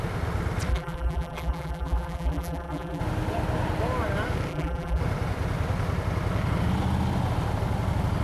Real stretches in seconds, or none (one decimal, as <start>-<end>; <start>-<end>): 0.0-0.7; 3.0-4.5; 5.0-8.2